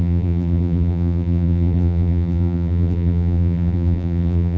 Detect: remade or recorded remade